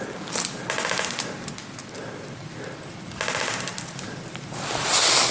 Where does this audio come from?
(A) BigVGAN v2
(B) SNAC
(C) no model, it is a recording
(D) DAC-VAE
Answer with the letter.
C